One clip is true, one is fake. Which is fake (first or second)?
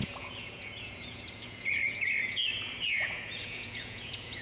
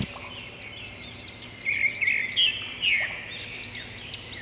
first